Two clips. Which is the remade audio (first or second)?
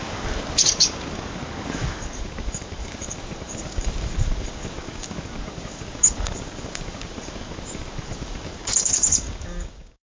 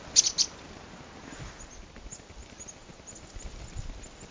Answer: first